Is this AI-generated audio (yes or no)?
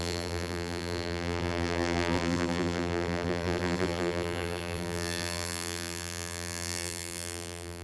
yes